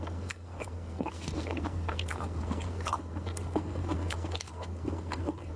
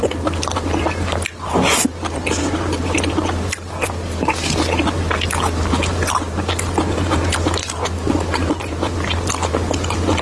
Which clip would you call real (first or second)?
second